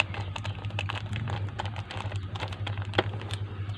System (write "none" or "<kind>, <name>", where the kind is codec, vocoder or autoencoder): none